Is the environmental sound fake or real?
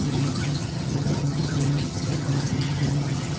fake